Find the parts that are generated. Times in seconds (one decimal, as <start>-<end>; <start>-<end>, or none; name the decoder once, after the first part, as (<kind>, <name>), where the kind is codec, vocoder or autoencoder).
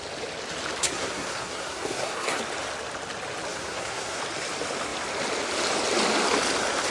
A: 0.8-2.4 (codec, SNAC); 3.5-4.2